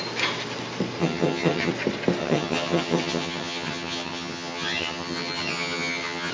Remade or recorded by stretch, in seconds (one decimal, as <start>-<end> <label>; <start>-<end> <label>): 0.0-1.0 recorded; 1.0-1.7 remade; 1.7-2.2 recorded; 2.2-6.3 remade